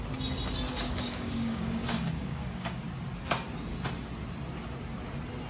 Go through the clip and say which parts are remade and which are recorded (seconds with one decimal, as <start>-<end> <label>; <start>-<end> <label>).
0.0-0.7 recorded; 0.7-2.8 remade; 2.8-5.5 recorded